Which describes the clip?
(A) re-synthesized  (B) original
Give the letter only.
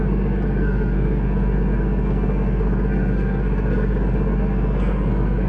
A